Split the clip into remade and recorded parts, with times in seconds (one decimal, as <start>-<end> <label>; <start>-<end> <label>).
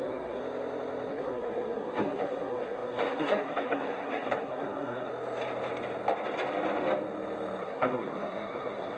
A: 0.0-0.4 remade; 0.4-1.1 recorded; 1.1-5.1 remade; 5.1-7.6 recorded; 7.6-9.0 remade